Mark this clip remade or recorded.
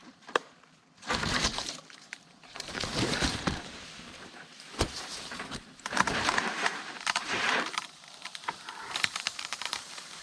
remade